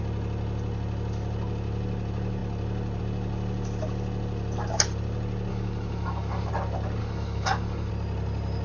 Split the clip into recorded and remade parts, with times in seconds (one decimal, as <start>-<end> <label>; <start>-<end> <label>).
0.0-5.5 recorded; 5.5-6.5 remade; 6.5-7.0 recorded; 7.0-7.9 remade; 7.9-8.6 recorded